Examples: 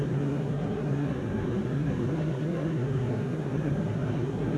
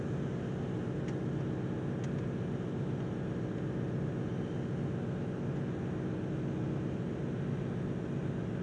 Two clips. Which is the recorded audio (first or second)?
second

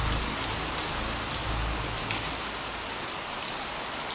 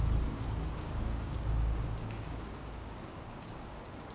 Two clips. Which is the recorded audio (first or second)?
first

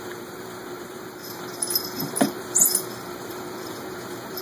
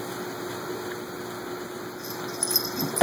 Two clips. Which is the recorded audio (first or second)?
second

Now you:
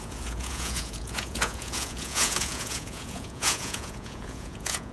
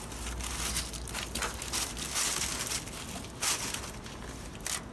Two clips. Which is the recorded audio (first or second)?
second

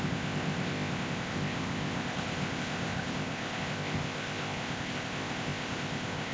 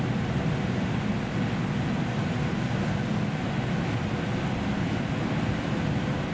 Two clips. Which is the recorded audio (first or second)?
second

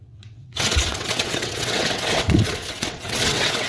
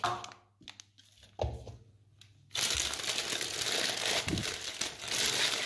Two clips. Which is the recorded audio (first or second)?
second